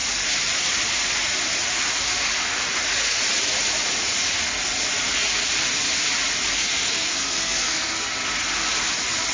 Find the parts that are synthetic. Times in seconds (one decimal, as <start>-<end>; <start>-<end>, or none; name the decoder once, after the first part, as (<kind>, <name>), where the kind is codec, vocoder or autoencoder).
6.5-8.1 (codec, SNAC)